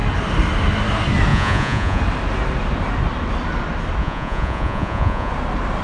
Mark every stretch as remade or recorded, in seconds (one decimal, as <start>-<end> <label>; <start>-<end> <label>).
0.0-1.3 recorded; 1.3-2.0 remade; 2.0-4.0 recorded; 4.0-5.3 remade; 5.3-5.8 recorded

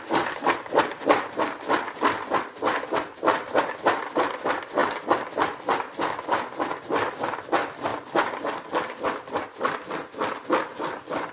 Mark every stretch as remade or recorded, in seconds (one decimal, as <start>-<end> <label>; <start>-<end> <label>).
0.0-11.3 recorded

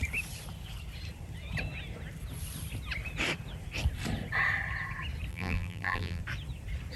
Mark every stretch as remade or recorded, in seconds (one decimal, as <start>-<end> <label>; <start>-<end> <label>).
0.0-5.3 recorded; 5.3-6.2 remade; 6.2-7.0 recorded

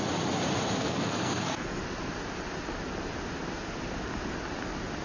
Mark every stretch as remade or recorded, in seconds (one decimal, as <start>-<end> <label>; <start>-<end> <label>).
0.0-0.8 recorded; 0.8-1.8 remade; 1.8-5.0 recorded

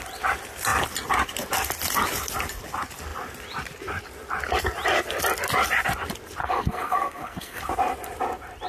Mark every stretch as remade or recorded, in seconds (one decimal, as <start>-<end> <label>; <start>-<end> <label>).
0.0-6.4 recorded; 6.4-7.6 remade; 7.6-8.7 recorded

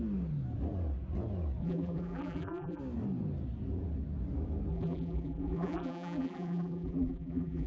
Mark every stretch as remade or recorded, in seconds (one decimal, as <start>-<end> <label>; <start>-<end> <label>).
0.0-1.6 recorded; 1.6-2.8 remade; 2.8-4.7 recorded; 4.7-7.7 remade

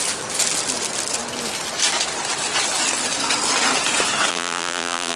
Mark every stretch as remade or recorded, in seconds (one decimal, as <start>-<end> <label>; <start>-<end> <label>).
0.0-4.3 recorded; 4.3-5.2 remade